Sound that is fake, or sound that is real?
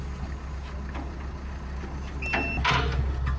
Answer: real